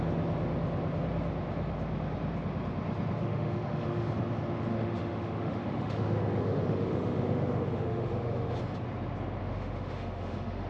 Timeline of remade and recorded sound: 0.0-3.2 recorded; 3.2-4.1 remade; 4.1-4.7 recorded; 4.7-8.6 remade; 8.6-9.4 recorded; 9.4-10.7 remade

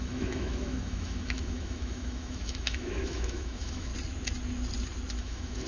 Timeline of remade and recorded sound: 0.0-3.9 remade; 3.9-5.2 recorded; 5.2-5.7 remade

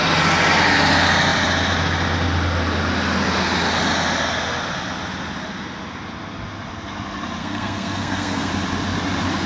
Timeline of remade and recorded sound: 0.0-7.4 recorded; 7.4-8.5 remade; 8.5-9.5 recorded

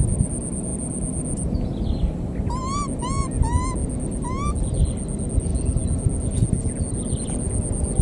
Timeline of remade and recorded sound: 0.0-8.0 recorded

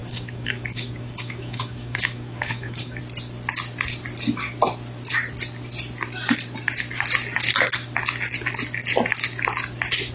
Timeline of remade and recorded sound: 0.0-3.0 remade; 3.0-10.1 recorded